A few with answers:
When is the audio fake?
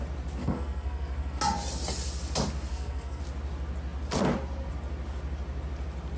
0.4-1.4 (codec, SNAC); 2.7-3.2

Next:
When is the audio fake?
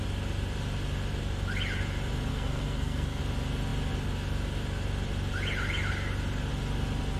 2.3-3.2 (codec, SNAC)